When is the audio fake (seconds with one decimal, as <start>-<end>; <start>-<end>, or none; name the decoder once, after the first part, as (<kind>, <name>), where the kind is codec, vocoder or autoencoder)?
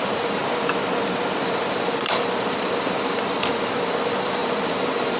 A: 0.0-0.4 (vocoder, BigVGAN v2); 1.4-5.2